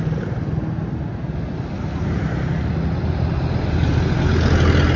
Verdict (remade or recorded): recorded